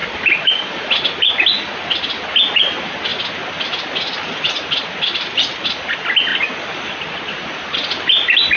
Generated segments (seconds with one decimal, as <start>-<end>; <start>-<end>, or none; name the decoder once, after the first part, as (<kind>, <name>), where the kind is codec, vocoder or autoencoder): 0.0-1.3 (vocoder, BigVGAN v2); 6.3-7.2